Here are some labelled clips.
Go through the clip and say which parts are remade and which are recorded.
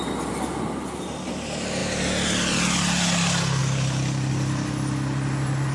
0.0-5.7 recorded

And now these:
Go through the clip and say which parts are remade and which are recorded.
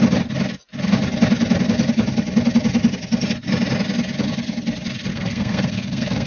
0.0-5.1 recorded; 5.1-6.3 remade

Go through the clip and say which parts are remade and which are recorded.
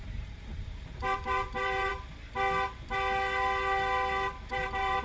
0.0-1.9 remade; 1.9-4.4 recorded; 4.4-5.0 remade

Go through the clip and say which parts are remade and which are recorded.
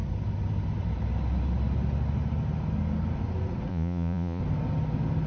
0.0-3.7 recorded; 3.7-4.4 remade; 4.4-5.3 recorded